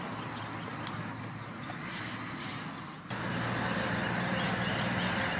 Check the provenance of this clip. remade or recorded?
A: recorded